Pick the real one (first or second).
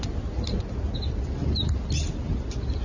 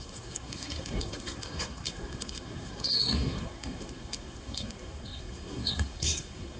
first